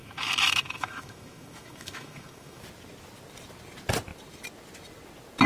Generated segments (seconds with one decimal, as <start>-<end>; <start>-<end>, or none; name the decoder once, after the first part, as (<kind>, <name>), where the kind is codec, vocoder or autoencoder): 0.0-2.6 (autoencoder, DAC-VAE)